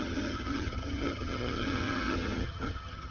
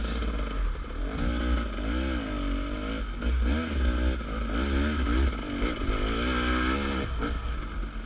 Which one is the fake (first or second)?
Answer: first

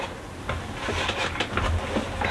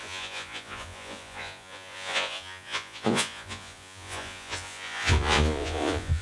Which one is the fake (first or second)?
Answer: second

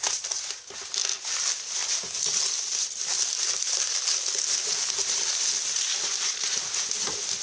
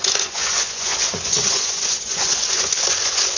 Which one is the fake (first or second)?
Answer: second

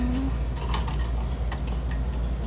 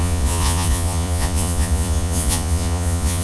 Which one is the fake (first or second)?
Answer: second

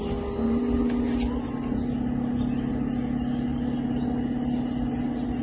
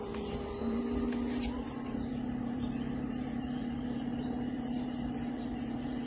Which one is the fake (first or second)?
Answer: second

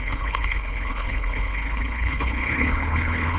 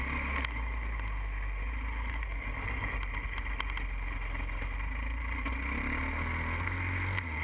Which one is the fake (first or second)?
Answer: first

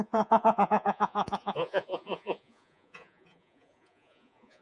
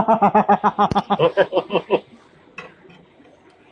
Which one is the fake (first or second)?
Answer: first